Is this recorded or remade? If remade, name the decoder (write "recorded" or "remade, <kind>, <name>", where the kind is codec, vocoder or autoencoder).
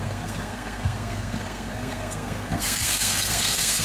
remade, codec, SNAC